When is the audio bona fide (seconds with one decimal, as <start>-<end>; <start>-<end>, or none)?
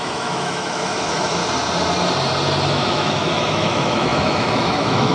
1.4-2.7